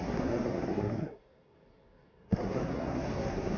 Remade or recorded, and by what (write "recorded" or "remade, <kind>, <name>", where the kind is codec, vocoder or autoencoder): remade, codec, SNAC